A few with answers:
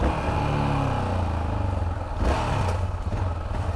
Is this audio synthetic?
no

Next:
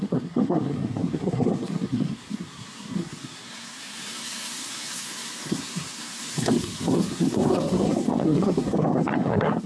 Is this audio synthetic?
yes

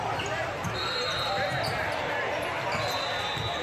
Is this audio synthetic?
no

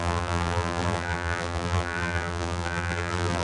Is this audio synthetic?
yes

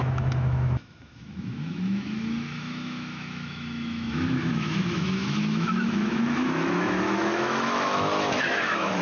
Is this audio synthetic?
yes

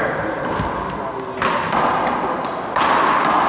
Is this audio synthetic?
no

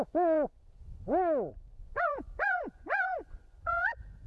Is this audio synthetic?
yes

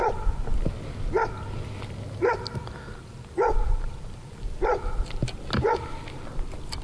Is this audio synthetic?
no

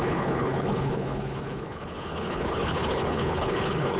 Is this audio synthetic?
yes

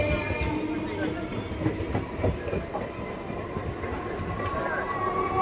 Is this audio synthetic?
no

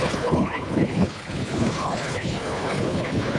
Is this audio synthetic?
yes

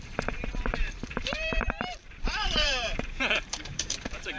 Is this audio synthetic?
yes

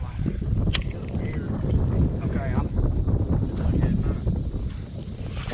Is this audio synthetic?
no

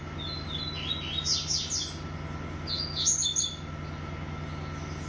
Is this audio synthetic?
no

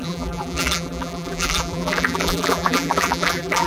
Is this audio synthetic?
yes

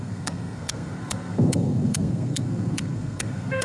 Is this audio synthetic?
yes